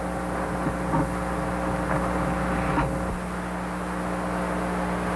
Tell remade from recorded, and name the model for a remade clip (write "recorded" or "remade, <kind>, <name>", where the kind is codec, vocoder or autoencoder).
recorded